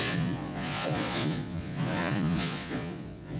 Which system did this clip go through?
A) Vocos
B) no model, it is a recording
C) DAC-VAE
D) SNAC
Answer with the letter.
A